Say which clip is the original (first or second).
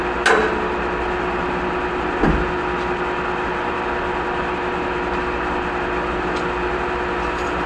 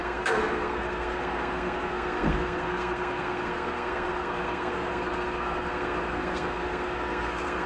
first